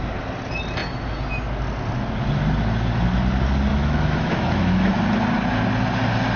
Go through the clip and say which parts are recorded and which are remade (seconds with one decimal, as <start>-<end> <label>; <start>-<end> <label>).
0.0-3.7 recorded; 3.7-4.9 remade; 4.9-6.4 recorded